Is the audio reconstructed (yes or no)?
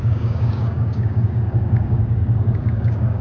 yes